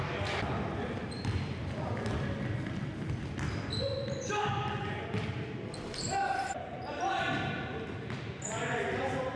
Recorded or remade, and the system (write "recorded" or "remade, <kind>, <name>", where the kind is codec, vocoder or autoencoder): recorded